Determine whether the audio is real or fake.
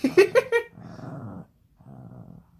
real